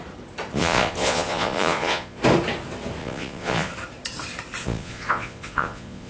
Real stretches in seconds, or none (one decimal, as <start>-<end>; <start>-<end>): 0.0-0.5; 2.2-3.0; 3.7-4.6